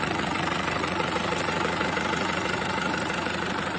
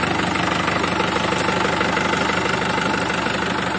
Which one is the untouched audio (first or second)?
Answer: second